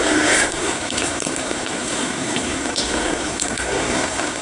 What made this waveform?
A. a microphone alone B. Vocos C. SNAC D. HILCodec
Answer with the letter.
C